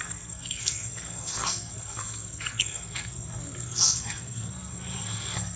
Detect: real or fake fake